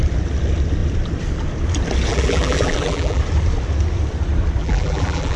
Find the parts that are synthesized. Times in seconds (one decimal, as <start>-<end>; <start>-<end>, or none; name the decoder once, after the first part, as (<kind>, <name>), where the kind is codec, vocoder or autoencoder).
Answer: 2.1-3.2 (vocoder, BigVGAN v2); 4.6-5.4